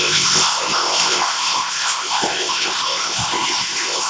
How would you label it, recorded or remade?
remade